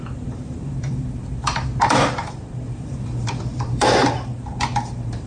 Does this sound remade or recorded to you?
remade